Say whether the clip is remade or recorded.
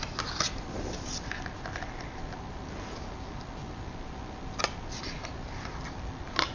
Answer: recorded